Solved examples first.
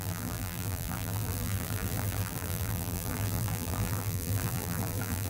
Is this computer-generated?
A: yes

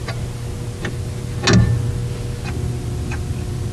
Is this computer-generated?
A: no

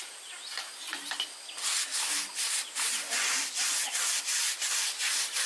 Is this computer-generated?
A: no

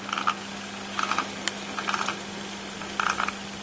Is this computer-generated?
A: no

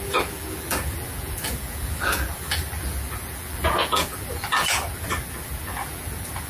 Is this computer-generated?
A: yes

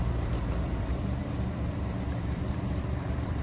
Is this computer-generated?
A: yes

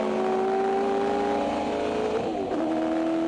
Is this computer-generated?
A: no